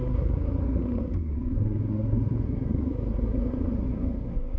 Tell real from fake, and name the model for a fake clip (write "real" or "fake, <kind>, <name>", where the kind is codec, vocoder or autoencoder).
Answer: fake, codec, SNAC